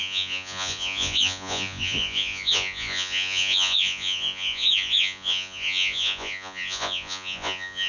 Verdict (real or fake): fake